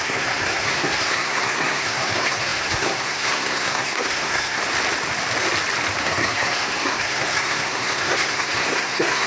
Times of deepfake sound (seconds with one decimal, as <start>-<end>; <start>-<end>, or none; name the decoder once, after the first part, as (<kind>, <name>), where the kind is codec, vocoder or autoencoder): 0.0-4.6 (codec, SNAC); 6.0-9.3